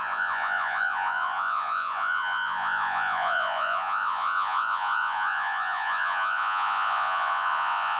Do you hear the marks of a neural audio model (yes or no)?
yes